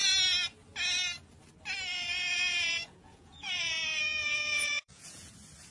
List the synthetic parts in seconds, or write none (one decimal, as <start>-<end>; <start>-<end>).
1.9-5.3